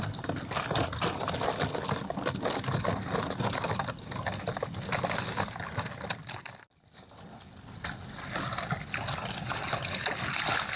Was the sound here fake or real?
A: real